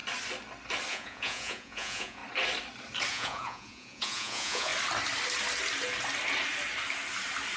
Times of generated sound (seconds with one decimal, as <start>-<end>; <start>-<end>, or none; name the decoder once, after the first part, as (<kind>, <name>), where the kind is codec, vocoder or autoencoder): 0.9-2.2 (vocoder, Vocos); 3.1-4.7